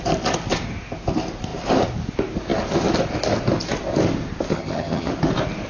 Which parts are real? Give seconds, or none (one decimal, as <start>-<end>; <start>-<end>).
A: 0.0-4.5; 5.1-5.7